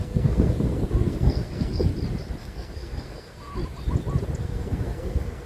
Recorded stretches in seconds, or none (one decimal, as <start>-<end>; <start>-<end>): 1.9-2.4; 3.5-4.4